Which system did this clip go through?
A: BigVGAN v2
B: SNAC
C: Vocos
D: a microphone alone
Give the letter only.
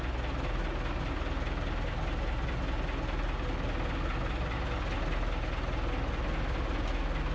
D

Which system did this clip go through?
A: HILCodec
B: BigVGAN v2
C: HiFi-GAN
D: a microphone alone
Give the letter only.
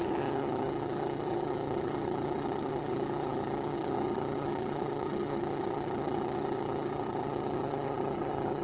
C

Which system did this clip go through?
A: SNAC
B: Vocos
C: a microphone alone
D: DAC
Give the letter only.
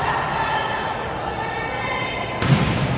C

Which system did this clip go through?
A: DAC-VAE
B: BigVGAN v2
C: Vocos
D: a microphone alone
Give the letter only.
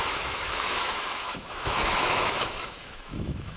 A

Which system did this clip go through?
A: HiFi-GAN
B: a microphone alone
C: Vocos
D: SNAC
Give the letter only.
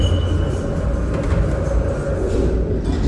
B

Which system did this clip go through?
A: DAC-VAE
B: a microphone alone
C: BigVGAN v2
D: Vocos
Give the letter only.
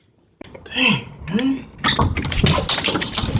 B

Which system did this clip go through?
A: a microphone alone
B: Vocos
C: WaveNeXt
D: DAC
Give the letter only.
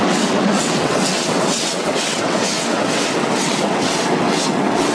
C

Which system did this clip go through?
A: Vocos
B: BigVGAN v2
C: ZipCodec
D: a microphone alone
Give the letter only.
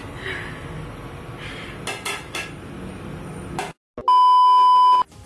D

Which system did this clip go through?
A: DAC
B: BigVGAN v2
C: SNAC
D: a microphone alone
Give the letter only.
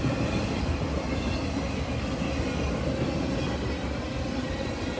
D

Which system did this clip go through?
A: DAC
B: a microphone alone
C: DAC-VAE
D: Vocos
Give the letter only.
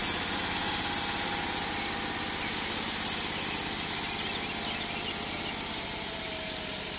B